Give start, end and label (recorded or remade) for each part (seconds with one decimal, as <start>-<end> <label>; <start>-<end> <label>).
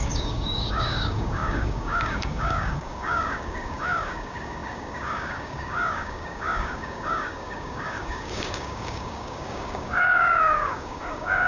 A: 0.0-11.5 remade